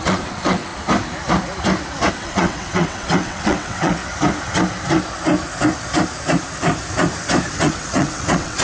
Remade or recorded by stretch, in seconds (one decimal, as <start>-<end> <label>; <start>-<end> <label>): 0.0-0.7 remade; 0.7-2.1 recorded; 2.1-4.0 remade; 4.0-7.5 recorded; 7.5-8.6 remade